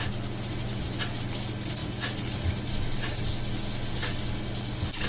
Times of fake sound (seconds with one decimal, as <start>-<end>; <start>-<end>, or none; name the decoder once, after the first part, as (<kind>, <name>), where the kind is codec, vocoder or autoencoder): none